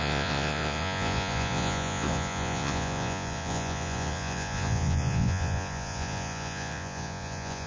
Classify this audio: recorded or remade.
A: remade